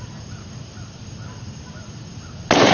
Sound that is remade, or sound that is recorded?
recorded